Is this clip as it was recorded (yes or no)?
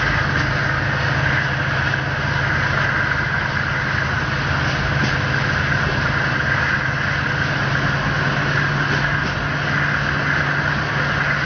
yes